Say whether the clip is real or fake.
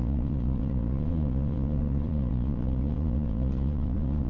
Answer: fake